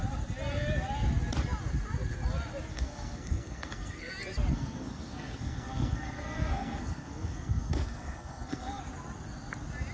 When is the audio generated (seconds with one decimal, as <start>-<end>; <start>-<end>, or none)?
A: 2.7-4.1; 4.5-8.8